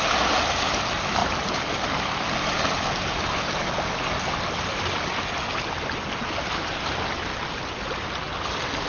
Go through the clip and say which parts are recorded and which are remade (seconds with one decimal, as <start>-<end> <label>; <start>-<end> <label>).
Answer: 0.0-8.9 recorded